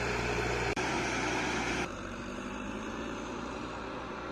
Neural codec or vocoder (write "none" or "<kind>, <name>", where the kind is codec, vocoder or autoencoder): vocoder, BigVGAN v2